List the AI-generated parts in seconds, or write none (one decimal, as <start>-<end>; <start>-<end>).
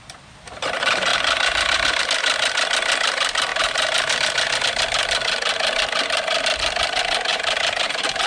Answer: 1.1-2.0; 3.5-4.6; 7.3-8.3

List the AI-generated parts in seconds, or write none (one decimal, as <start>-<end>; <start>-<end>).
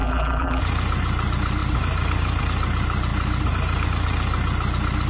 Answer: 0.0-0.6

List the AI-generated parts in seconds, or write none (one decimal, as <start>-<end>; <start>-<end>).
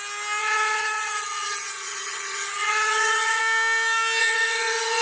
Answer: 0.4-3.4; 4.2-5.0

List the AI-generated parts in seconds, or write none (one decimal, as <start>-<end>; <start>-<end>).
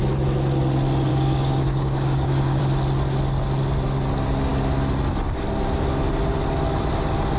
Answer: 1.1-2.6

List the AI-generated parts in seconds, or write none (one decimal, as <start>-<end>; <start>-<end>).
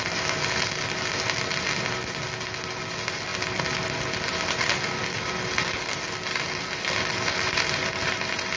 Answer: none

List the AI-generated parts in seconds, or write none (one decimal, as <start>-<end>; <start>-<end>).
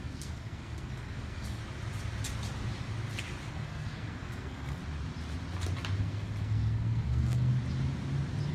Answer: 0.0-1.6; 3.5-4.8; 6.0-7.5